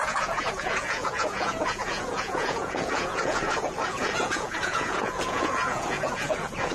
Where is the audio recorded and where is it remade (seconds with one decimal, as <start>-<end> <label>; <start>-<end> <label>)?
0.0-6.7 remade